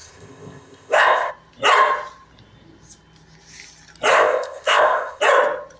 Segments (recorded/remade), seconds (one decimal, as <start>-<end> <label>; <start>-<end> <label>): 0.0-1.3 remade; 1.3-4.1 recorded; 4.1-5.2 remade; 5.2-5.8 recorded